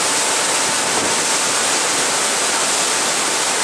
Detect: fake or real real